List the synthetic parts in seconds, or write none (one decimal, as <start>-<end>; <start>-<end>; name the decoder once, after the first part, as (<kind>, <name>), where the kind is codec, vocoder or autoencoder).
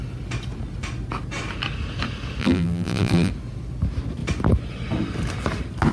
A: 2.4-3.3 (vocoder, BigVGAN v2)